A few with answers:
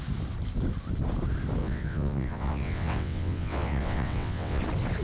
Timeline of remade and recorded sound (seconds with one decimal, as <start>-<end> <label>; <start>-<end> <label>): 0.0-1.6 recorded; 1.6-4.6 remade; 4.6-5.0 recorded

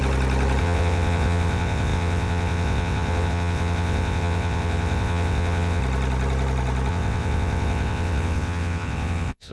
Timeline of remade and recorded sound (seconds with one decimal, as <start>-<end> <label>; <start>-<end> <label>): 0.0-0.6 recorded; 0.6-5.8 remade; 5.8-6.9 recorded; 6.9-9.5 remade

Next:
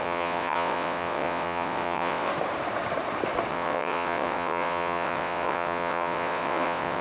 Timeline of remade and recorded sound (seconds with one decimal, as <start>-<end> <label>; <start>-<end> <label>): 0.0-2.3 remade; 2.3-3.5 recorded; 3.5-7.0 remade